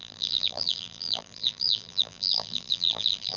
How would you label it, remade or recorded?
remade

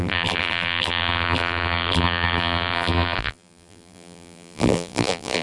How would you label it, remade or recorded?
remade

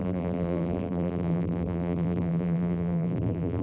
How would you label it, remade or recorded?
remade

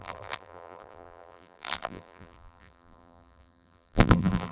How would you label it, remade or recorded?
remade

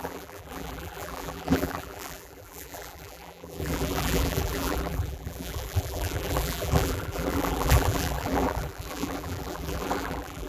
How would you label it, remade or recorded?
remade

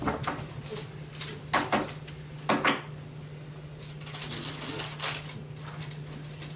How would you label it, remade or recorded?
recorded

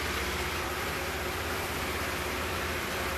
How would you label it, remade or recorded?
remade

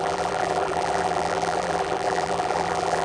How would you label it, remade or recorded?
remade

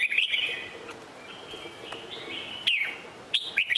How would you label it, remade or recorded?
recorded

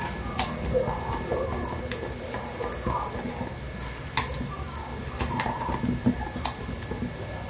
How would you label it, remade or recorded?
recorded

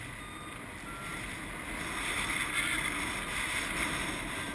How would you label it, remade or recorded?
recorded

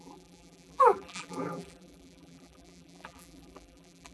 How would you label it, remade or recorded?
remade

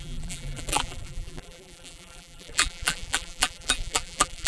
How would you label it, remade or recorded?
remade